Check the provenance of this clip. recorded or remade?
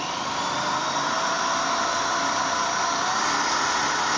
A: recorded